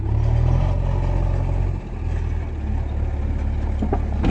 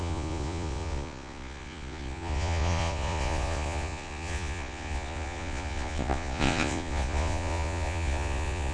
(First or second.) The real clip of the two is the first